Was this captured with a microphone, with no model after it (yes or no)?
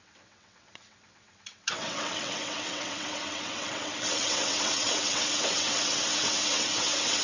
no